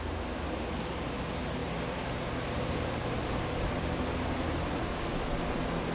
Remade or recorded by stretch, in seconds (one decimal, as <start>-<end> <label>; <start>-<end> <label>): 0.0-5.9 recorded